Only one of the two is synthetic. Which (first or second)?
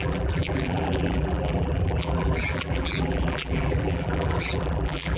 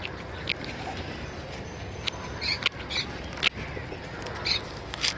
first